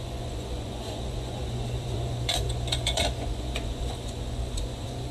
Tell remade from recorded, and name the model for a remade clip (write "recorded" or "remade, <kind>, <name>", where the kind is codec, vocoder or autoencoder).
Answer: remade, vocoder, Vocos